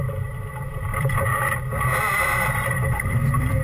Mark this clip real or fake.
fake